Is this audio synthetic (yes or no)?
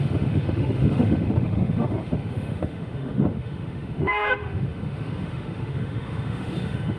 yes